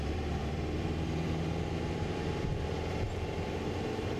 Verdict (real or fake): fake